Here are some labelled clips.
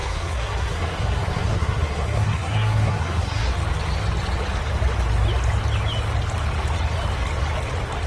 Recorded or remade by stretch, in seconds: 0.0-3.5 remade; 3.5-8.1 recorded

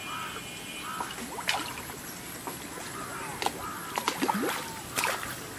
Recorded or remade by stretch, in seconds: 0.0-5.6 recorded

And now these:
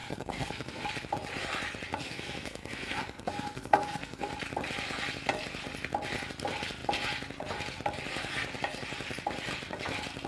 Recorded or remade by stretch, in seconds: 0.0-0.8 remade; 0.8-2.0 recorded; 2.0-4.3 remade; 4.3-10.3 recorded